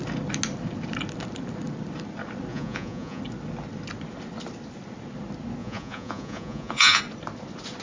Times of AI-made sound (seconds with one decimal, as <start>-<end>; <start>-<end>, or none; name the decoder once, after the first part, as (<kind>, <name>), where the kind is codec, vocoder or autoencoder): 2.5-3.2 (vocoder, Vocos); 5.6-7.0